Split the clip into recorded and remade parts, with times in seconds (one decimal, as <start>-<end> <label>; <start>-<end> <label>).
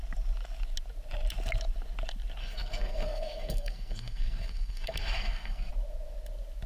0.0-2.4 recorded; 2.4-5.7 remade; 5.7-6.7 recorded